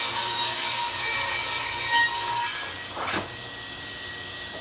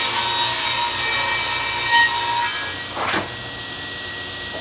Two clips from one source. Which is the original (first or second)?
second